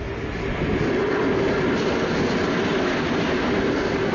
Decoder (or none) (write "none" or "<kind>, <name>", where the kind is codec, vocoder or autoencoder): none